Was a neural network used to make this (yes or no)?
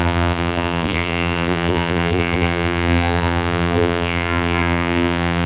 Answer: yes